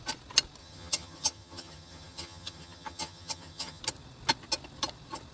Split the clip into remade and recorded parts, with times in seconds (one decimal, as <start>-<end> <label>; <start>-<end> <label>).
0.0-0.6 recorded; 0.6-3.8 remade; 3.8-5.3 recorded

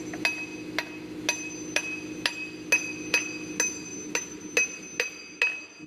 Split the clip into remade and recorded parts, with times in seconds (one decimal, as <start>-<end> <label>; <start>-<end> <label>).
0.0-5.9 recorded